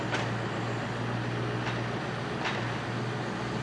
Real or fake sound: real